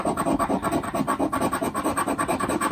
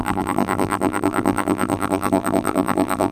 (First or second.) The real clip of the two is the first